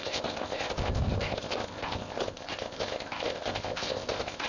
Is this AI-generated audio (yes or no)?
yes